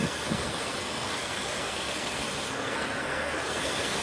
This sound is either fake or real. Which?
fake